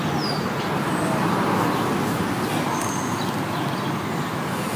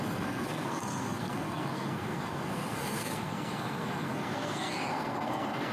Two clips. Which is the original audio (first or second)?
first